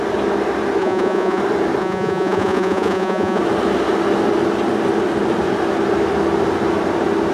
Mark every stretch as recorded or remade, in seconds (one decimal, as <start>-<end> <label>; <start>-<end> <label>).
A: 0.0-0.8 recorded; 0.8-1.4 remade; 1.4-1.8 recorded; 1.8-3.4 remade; 3.4-7.3 recorded